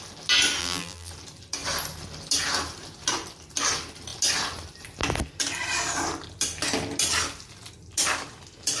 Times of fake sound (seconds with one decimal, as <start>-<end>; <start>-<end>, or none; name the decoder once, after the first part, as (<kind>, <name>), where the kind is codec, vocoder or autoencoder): 0.6-1.1 (vocoder, BigVGAN v2)